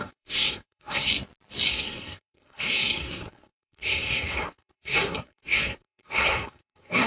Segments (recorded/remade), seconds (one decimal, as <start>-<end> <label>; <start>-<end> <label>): 0.0-1.1 remade; 1.1-1.7 recorded; 1.7-7.1 remade

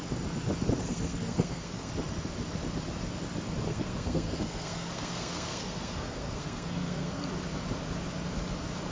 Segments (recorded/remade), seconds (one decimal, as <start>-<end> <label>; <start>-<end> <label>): 0.0-0.8 recorded; 0.8-1.9 remade; 1.9-3.7 recorded; 3.7-7.3 remade; 7.3-8.9 recorded

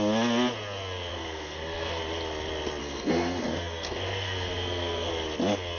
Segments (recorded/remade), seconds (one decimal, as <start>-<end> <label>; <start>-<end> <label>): 0.0-1.1 recorded; 1.1-2.0 remade; 2.0-2.8 recorded; 2.8-5.1 remade; 5.1-5.8 recorded

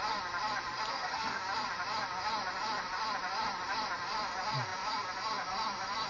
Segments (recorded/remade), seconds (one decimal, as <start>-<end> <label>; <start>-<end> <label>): 0.0-0.9 recorded; 0.9-1.4 remade; 1.4-6.1 recorded

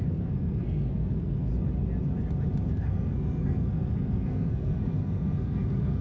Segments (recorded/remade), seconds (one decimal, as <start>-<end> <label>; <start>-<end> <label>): 0.0-1.5 remade; 1.5-2.7 recorded; 2.7-6.0 remade

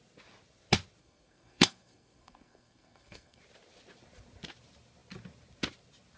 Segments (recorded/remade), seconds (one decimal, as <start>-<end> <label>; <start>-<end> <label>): 0.0-1.0 recorded; 1.0-3.4 remade; 3.4-6.2 recorded

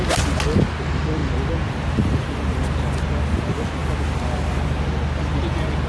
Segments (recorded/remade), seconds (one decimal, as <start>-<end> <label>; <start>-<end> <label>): 0.0-5.9 recorded